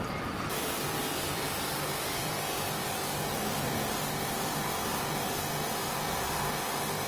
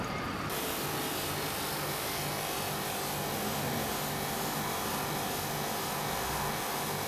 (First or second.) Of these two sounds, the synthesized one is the first